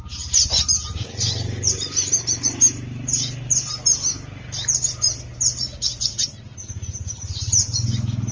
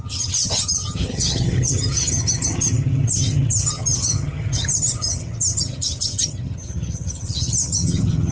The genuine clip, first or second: first